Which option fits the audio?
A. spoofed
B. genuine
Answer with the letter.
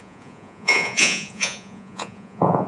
A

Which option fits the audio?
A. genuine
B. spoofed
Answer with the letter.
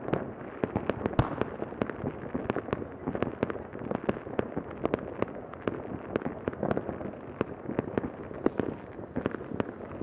A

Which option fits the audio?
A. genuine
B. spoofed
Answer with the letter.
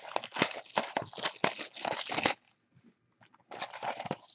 A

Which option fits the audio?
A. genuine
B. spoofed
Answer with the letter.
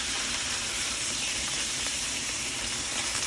B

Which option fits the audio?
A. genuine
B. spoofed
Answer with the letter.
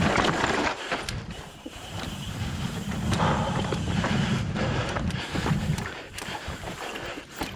B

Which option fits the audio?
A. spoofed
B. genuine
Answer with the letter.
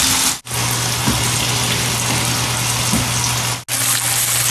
B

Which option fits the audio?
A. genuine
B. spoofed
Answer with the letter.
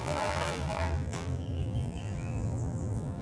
B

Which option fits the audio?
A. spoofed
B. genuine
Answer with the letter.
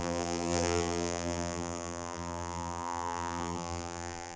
A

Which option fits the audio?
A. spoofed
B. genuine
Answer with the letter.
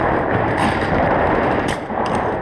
A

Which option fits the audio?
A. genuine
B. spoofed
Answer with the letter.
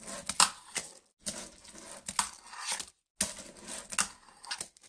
A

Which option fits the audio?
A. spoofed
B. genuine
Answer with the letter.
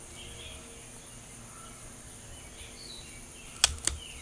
B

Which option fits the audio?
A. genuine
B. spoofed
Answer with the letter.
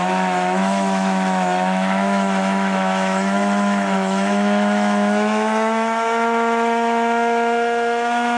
B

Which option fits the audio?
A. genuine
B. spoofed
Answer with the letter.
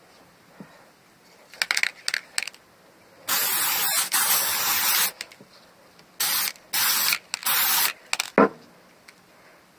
A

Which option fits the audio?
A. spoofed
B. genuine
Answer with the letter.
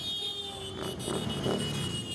B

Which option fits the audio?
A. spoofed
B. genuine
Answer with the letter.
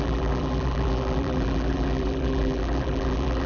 A